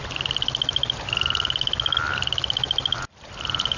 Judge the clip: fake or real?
real